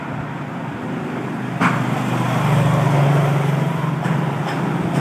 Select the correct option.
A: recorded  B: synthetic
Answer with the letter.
A